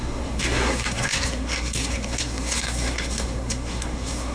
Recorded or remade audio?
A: remade